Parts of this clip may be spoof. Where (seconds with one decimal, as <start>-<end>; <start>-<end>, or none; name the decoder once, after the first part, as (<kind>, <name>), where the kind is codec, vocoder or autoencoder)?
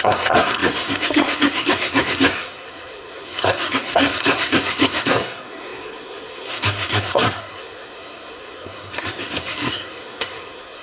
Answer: 0.0-10.8 (codec, SNAC)